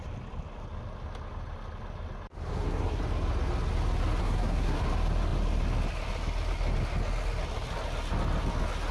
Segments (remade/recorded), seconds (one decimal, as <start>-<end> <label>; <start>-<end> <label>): 0.0-2.5 recorded; 2.5-3.0 remade; 3.0-4.2 recorded; 4.2-4.8 remade; 4.8-8.9 recorded

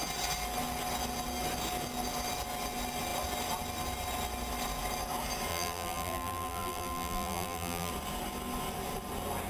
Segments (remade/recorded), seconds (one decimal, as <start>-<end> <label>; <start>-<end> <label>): 0.0-5.5 recorded; 5.5-7.9 remade; 7.9-9.5 recorded